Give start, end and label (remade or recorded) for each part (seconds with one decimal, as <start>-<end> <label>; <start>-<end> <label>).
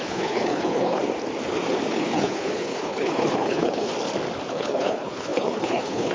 0.0-1.0 remade; 1.0-1.9 recorded; 1.9-3.9 remade; 3.9-4.5 recorded; 4.5-6.1 remade